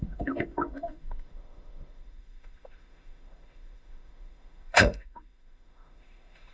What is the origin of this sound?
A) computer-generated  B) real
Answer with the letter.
A